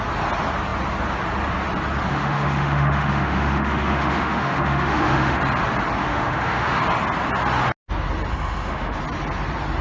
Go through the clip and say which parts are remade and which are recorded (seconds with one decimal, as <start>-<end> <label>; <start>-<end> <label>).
0.0-2.1 recorded; 2.1-5.4 remade; 5.4-6.0 recorded; 6.0-6.8 remade; 6.8-8.3 recorded; 8.3-9.0 remade; 9.0-9.8 recorded